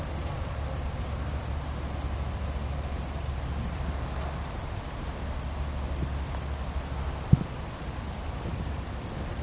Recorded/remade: recorded